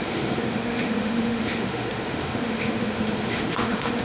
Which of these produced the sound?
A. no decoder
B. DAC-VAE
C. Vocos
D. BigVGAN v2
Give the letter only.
B